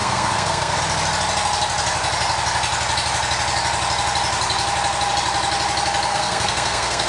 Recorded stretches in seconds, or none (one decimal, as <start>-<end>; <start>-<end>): 0.8-6.1